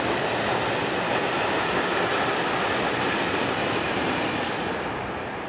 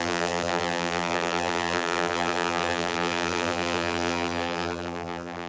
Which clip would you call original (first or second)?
first